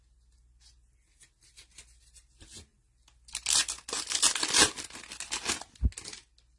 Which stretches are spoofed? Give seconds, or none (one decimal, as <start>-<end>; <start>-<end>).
none